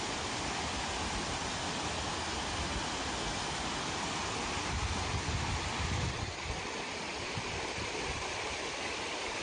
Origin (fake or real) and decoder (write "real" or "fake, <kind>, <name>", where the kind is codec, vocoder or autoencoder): real